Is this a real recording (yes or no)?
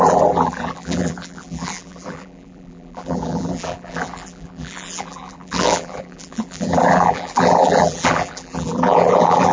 no